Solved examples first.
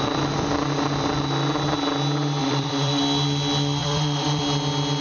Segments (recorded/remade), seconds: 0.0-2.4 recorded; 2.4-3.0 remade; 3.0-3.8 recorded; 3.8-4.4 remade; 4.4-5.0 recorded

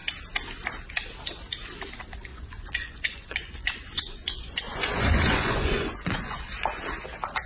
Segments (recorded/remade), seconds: 0.0-2.3 recorded; 2.3-6.8 remade; 6.8-7.5 recorded

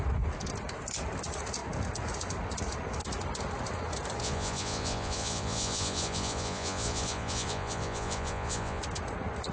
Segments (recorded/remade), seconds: 0.0-4.2 recorded; 4.2-8.8 remade; 8.8-9.5 recorded

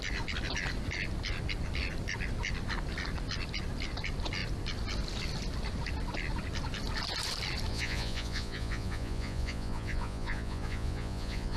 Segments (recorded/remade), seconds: 0.0-7.7 recorded; 7.7-11.6 remade

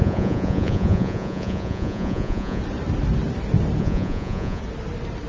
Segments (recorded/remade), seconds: 0.0-2.6 remade; 2.6-3.8 recorded; 3.8-4.6 remade; 4.6-5.3 recorded

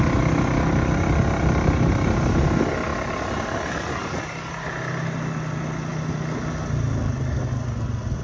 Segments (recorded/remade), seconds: 0.0-8.2 recorded

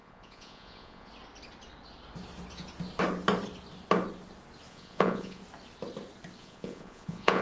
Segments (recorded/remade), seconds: 0.0-1.1 remade; 1.1-4.7 recorded; 4.7-5.4 remade; 5.4-6.4 recorded; 6.4-7.4 remade